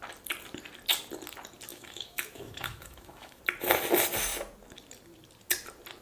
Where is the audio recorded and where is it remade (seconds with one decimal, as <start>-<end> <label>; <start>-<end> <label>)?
0.0-1.7 recorded; 1.7-3.4 remade; 3.4-6.0 recorded